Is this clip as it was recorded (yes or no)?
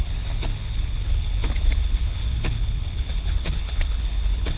no